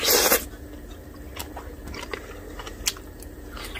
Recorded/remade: recorded